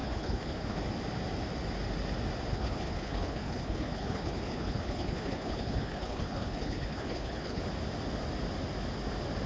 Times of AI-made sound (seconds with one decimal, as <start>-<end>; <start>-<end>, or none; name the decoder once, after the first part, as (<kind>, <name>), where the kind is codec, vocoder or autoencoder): 0.0-0.8 (codec, HILCodec); 2.5-7.6